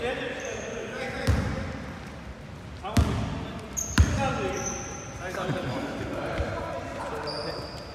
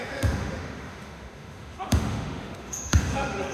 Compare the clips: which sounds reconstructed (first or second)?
second